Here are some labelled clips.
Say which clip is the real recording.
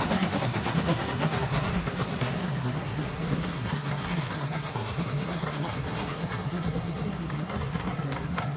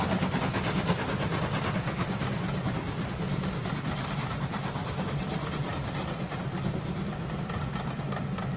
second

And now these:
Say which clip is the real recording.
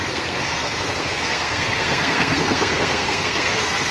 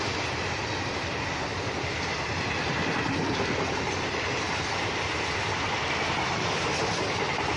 second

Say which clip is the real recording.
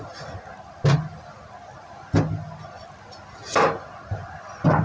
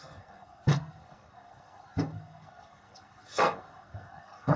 first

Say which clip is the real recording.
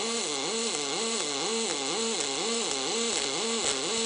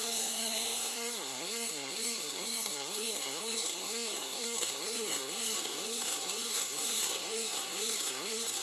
first